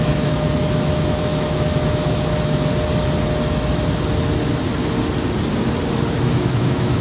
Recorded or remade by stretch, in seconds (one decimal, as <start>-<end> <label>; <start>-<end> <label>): 0.0-2.6 remade; 2.6-6.1 recorded; 6.1-7.0 remade